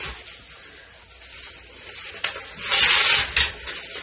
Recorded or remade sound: recorded